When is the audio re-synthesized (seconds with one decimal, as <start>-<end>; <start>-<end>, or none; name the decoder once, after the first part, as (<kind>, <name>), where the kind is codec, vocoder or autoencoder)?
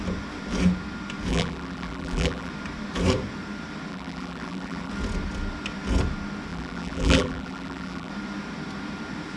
1.3-2.5 (vocoder, BigVGAN v2); 3.9-4.9; 6.5-8.1